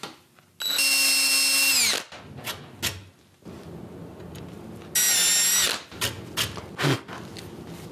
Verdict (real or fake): real